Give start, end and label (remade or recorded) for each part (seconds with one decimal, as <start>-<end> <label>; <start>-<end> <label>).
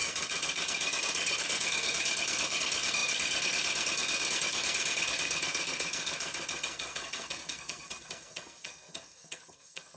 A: 0.0-10.0 remade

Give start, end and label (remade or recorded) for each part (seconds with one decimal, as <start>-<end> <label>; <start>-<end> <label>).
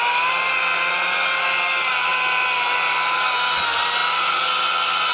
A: 0.0-5.1 recorded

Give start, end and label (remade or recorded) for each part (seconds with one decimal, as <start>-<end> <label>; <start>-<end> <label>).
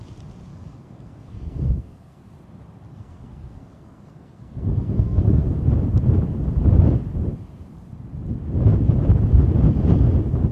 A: 0.0-0.5 recorded; 0.5-2.3 remade; 2.3-2.9 recorded; 2.9-5.6 remade; 5.6-10.5 recorded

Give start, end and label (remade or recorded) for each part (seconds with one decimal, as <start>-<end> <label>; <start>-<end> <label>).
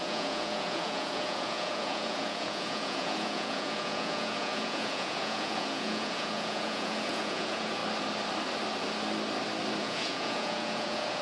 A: 0.0-7.8 remade; 7.8-9.8 recorded; 9.8-11.2 remade